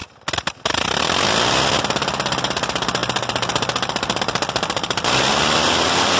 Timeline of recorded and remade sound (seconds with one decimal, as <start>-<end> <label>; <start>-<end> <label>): 0.0-6.2 recorded